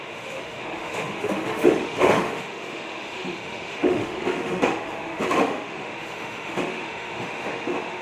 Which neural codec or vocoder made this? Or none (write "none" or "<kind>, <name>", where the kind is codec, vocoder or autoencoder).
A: autoencoder, DAC-VAE